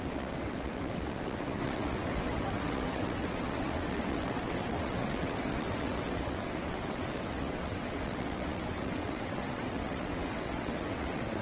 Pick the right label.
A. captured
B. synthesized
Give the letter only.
B